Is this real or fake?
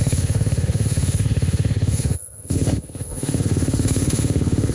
fake